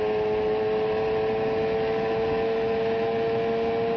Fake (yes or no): no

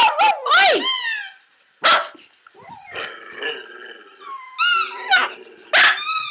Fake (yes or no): no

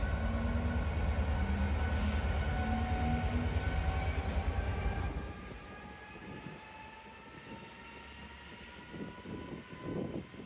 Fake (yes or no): no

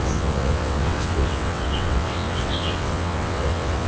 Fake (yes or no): yes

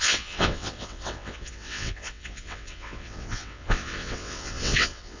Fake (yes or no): yes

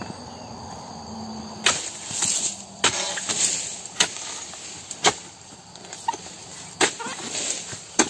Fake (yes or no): no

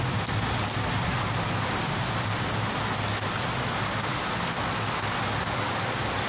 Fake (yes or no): no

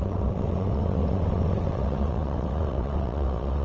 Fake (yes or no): yes